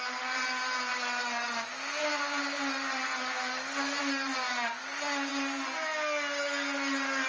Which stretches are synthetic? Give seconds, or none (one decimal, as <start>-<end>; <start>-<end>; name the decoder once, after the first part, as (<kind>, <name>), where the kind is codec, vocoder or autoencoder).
none